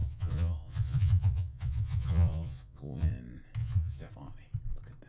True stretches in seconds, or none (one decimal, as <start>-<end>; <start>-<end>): 3.1-3.6; 4.1-5.1